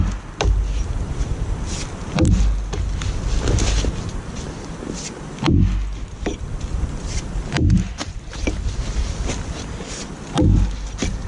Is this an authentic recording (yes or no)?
yes